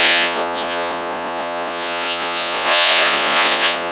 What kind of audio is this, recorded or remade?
remade